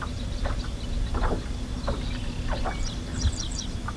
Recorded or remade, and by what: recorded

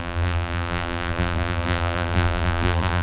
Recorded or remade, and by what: remade, vocoder, BigVGAN v2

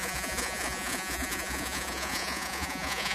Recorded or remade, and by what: remade, vocoder, Vocos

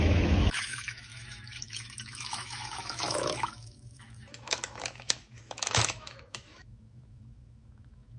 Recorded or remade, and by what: remade, autoencoder, DAC-VAE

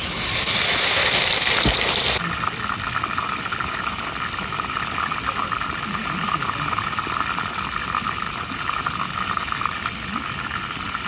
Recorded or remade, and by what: recorded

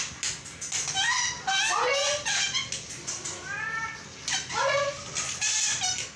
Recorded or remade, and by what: recorded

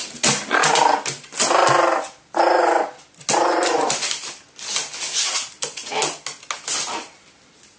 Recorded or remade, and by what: recorded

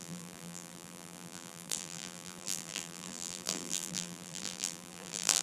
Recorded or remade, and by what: remade, vocoder, BigVGAN v2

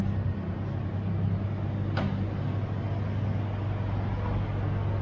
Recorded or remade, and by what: recorded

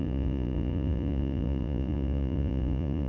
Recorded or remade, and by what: remade, vocoder, Vocos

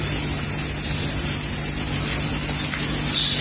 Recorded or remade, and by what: recorded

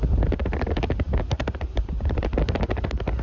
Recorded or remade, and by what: remade, vocoder, BigVGAN v2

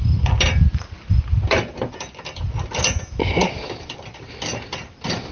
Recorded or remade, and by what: recorded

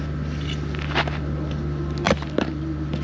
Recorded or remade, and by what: recorded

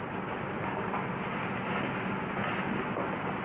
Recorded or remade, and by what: recorded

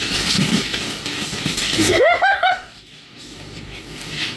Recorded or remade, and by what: remade, codec, DAC